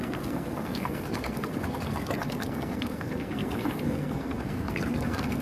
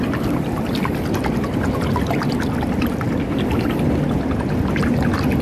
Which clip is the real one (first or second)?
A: second